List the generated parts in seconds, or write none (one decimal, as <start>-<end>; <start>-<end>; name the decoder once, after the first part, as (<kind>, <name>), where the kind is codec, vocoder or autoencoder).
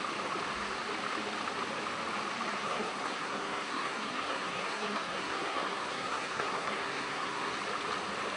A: 2.5-7.5 (codec, SNAC)